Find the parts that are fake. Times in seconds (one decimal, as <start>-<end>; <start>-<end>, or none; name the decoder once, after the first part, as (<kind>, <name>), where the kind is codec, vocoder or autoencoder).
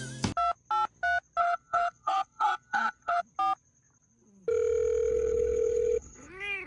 1.4-3.2 (codec, HILCodec); 5.1-6.3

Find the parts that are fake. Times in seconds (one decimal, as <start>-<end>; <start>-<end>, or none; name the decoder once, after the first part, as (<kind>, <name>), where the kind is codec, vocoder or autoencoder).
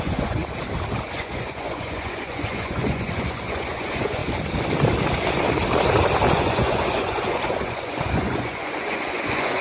0.0-0.4 (vocoder, Vocos); 1.1-4.2; 6.3-9.6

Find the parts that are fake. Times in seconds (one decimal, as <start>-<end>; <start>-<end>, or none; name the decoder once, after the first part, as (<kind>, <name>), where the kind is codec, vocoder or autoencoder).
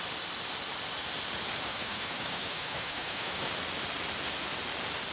1.7-3.5 (autoencoder, DAC-VAE)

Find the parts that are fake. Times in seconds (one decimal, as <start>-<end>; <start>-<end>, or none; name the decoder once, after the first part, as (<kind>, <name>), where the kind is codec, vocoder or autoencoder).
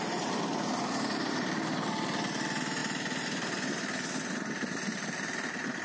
1.2-1.8 (vocoder, BigVGAN v2)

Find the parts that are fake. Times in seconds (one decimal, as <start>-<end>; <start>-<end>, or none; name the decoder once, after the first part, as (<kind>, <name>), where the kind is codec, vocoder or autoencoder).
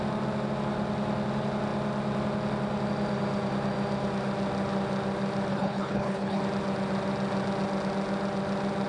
5.5-6.4 (codec, HILCodec)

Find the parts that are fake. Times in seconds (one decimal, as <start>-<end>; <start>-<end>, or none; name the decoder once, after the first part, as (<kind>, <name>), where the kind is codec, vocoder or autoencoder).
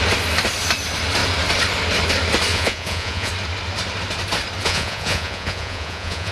2.5-3.3 (vocoder, Vocos); 4.6-6.3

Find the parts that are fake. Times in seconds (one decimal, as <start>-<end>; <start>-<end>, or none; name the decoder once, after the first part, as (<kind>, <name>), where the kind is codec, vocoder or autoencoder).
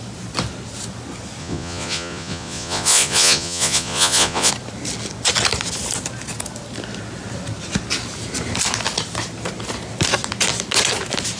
1.4-4.5 (vocoder, Vocos)